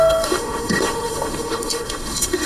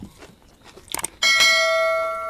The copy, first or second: first